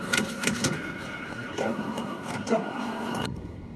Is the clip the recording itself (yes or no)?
no